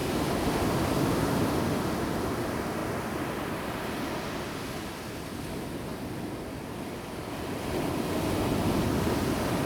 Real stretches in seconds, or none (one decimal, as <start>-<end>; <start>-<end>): 0.0-9.7